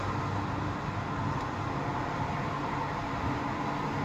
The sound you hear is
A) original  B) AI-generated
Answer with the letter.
A